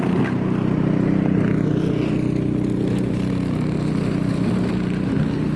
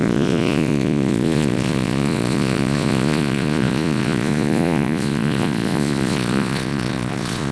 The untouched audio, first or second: first